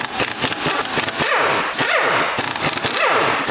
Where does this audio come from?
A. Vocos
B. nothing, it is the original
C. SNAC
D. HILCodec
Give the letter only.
B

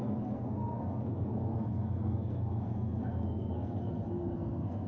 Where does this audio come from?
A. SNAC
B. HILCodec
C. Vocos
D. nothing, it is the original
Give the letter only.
A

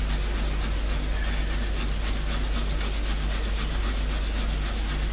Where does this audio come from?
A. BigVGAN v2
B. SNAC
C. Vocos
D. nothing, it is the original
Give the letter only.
D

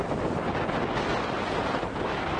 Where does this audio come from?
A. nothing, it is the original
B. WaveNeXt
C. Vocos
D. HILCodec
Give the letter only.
A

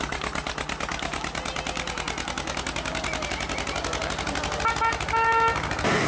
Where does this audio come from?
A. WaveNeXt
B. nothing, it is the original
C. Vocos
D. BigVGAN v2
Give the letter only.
B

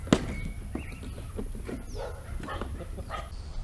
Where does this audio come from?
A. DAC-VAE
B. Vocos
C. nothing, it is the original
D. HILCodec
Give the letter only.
C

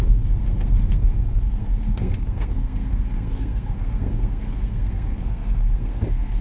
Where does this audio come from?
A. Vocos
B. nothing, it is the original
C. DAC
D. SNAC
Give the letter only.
D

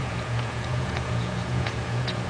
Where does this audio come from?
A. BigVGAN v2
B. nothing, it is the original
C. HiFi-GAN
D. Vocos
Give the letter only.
D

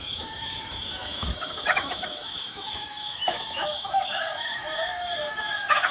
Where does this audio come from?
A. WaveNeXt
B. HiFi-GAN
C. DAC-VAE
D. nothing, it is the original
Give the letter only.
C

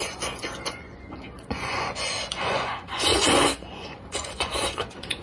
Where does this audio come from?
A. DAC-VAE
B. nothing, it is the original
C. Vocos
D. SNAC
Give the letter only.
C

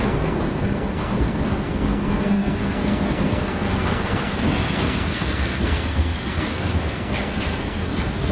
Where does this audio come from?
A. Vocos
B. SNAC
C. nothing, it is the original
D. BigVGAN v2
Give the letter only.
B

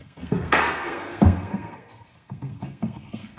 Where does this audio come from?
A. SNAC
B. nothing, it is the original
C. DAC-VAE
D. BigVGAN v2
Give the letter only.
A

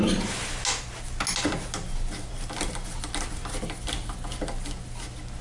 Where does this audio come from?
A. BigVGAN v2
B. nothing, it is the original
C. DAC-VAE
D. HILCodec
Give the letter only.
B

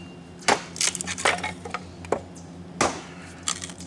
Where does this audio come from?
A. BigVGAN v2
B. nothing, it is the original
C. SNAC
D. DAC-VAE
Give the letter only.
B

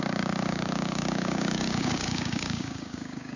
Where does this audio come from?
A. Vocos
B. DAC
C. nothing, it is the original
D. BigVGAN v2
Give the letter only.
B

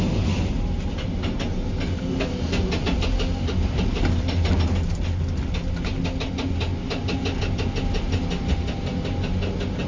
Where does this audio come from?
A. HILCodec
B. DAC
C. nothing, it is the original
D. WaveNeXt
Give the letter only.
C